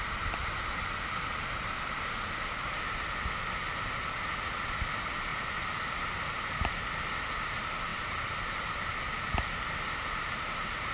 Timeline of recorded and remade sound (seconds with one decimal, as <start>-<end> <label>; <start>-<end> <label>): 0.0-7.9 recorded; 7.9-10.9 remade